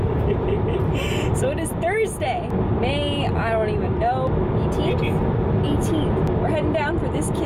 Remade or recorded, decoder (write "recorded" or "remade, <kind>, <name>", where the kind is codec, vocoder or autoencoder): recorded